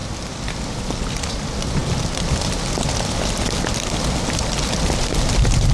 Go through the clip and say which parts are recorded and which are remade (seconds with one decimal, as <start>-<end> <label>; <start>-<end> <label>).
0.0-5.7 recorded